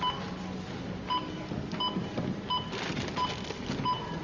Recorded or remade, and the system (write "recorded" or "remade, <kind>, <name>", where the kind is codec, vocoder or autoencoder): recorded